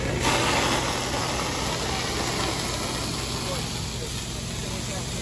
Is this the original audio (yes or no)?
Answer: yes